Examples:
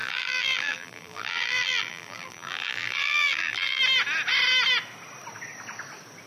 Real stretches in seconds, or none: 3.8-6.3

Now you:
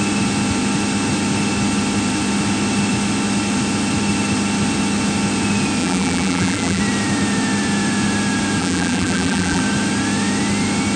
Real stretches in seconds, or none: 0.0-5.8; 6.8-8.6; 9.6-11.0